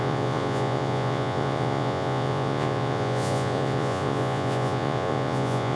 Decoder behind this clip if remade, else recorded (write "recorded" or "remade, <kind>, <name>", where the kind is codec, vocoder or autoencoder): remade, vocoder, Vocos